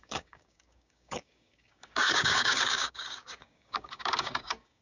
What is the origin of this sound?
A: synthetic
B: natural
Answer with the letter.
A